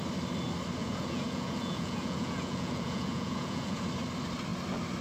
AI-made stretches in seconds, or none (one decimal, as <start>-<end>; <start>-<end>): 0.8-3.8